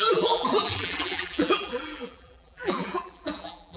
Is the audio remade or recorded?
remade